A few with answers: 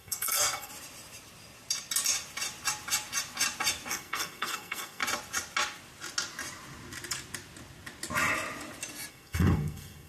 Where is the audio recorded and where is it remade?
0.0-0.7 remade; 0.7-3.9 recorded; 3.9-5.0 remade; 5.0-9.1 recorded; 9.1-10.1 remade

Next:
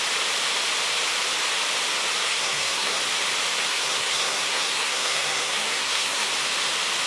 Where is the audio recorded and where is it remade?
0.0-2.2 recorded; 2.2-3.0 remade; 3.0-3.7 recorded; 3.7-6.3 remade; 6.3-7.1 recorded